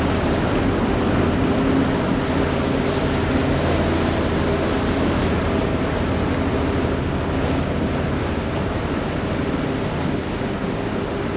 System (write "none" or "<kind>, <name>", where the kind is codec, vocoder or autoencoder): none